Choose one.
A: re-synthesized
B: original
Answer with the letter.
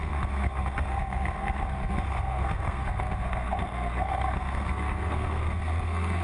A